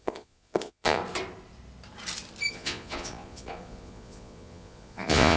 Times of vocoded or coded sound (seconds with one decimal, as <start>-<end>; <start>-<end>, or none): 0.0-1.0; 2.5-5.4